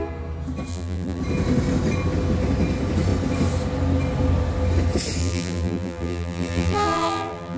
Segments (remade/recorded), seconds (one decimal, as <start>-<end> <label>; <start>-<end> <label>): 0.0-0.7 recorded; 0.7-1.2 remade; 1.2-5.2 recorded; 5.2-7.6 remade